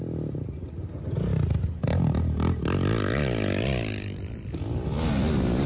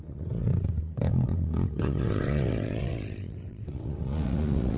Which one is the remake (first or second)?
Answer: second